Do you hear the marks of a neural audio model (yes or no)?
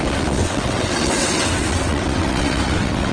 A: yes